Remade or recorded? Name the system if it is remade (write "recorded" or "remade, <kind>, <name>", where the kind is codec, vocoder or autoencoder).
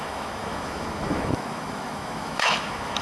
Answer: remade, autoencoder, DAC-VAE